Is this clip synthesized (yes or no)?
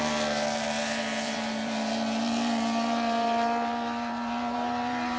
yes